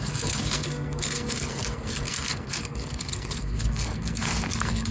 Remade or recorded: remade